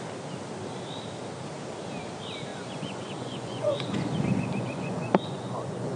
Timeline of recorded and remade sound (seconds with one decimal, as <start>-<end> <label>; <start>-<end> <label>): 0.0-2.5 recorded; 2.5-6.0 remade